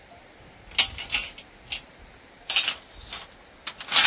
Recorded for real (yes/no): yes